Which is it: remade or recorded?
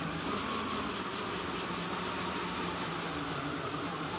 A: recorded